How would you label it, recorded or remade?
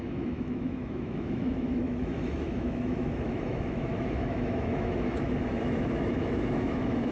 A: remade